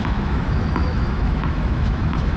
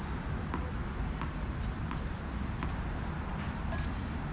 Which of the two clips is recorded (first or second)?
second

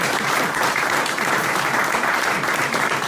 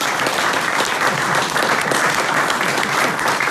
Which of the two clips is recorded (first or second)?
second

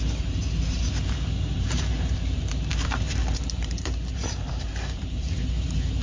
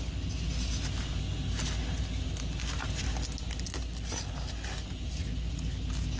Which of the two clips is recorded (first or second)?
second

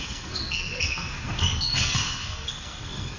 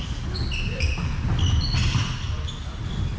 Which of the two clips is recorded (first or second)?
second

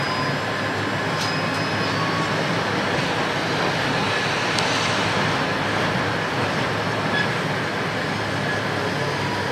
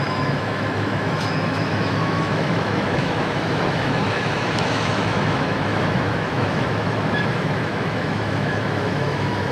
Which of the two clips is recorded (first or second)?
first